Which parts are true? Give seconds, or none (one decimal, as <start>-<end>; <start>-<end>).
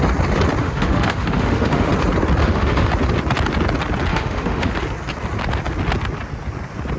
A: 0.0-0.6; 1.9-2.4; 2.9-4.1; 4.7-7.0